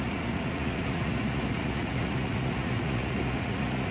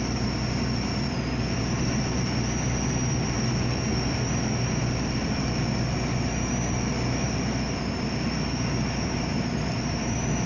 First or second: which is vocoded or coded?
first